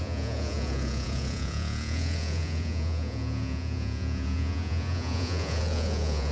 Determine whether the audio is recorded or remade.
remade